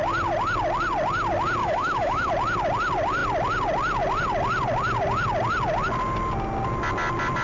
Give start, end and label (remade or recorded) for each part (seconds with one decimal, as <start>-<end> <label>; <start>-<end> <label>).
0.0-1.6 recorded; 1.6-2.3 remade; 2.3-7.4 recorded